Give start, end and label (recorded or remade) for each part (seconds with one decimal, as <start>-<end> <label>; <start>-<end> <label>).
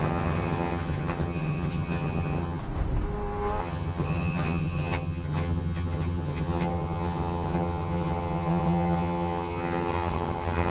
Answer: 0.0-2.6 remade; 2.6-3.6 recorded; 3.6-10.7 remade